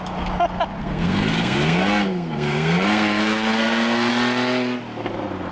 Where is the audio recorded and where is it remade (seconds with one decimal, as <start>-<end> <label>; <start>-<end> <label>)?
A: 0.0-0.8 recorded; 0.8-4.1 remade; 4.1-5.5 recorded